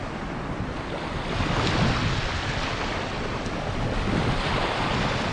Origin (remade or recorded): recorded